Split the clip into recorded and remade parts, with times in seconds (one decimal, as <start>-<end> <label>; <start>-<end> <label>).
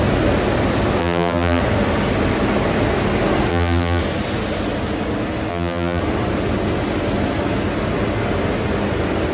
0.0-1.0 recorded; 1.0-1.6 remade; 1.6-3.5 recorded; 3.5-4.0 remade; 4.0-5.5 recorded; 5.5-6.0 remade; 6.0-9.3 recorded